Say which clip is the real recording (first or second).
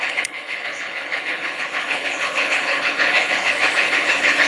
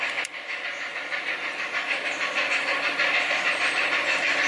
second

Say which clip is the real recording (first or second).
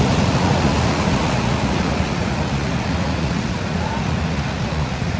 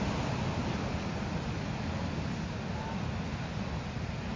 second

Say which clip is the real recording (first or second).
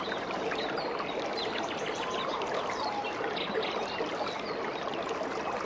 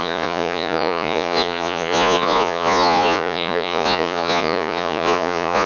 first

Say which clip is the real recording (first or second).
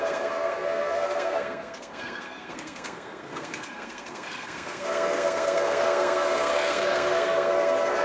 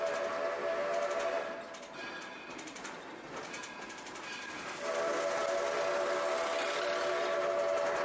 second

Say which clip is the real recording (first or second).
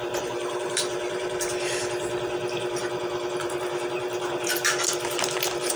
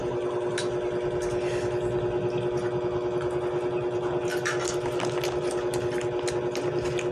second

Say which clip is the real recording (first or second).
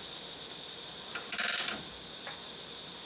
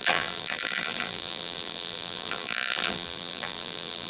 first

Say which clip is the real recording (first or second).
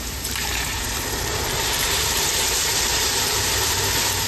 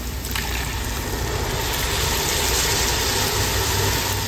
second